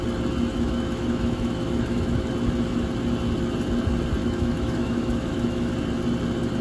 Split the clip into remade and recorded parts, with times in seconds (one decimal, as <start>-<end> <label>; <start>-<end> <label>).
0.0-0.5 recorded; 0.5-2.3 remade; 2.3-4.2 recorded; 4.2-5.7 remade; 5.7-6.6 recorded

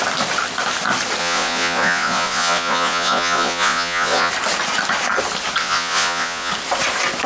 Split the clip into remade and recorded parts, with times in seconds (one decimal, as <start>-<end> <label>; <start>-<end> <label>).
0.0-1.2 recorded; 1.2-4.3 remade; 4.3-5.6 recorded; 5.6-6.5 remade; 6.5-7.3 recorded

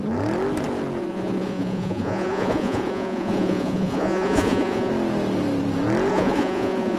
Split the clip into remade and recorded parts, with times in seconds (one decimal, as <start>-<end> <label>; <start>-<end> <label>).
0.0-1.0 recorded; 1.0-4.9 remade; 4.9-6.1 recorded; 6.1-7.0 remade

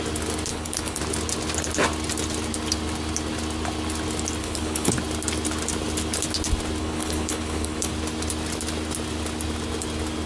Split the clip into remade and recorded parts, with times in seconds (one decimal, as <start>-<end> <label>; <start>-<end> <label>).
0.0-0.5 recorded; 0.5-1.0 remade; 1.0-4.4 recorded; 4.4-4.9 remade; 4.9-6.8 recorded; 6.8-7.9 remade; 7.9-10.3 recorded

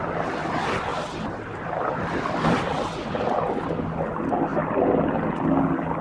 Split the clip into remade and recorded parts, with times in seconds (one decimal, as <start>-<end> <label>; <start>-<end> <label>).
0.0-0.9 recorded; 0.9-3.5 remade; 3.5-4.5 recorded; 4.5-5.1 remade; 5.1-6.0 recorded

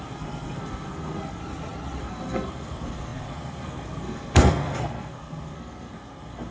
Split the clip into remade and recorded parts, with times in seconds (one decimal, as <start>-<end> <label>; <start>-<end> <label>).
0.0-1.4 remade; 1.4-2.0 recorded; 2.0-6.5 remade